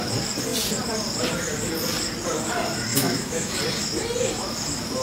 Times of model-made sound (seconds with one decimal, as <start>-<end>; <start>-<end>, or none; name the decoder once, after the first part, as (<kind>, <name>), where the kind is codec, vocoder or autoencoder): 2.9-3.5 (autoencoder, DAC-VAE)